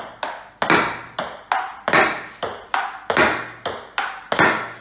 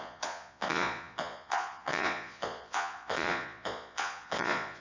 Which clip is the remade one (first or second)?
second